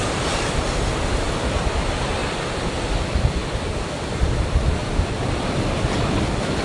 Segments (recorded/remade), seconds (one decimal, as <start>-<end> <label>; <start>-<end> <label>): 0.0-6.6 recorded